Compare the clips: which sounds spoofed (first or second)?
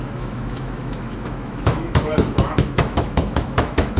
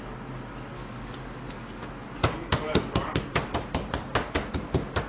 first